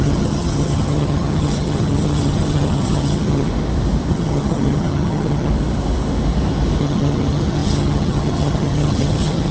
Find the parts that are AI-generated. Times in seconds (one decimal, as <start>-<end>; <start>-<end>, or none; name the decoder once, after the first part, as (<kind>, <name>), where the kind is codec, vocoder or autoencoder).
0.0-3.5 (vocoder, HiFi-GAN); 4.1-5.5; 6.8-9.5